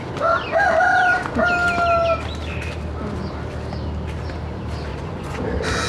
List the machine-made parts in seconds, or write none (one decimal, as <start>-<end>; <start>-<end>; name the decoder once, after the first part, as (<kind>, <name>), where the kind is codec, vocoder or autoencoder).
4.9-5.4 (vocoder, Vocos)